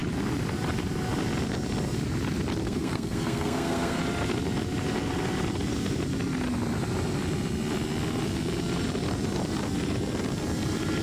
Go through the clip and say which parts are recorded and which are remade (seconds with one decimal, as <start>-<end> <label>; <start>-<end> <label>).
0.0-2.6 recorded; 2.6-4.0 remade; 4.0-11.0 recorded